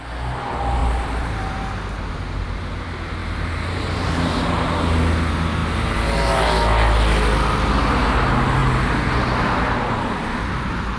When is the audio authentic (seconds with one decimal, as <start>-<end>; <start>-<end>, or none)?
0.0-0.8; 2.1-3.2; 4.5-11.0